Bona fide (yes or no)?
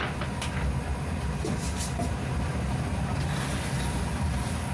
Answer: yes